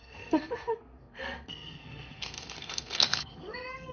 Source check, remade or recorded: remade